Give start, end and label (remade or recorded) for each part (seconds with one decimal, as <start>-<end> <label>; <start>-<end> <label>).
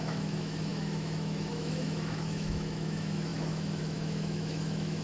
0.0-5.0 remade